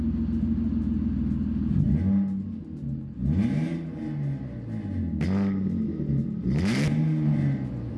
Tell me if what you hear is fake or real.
real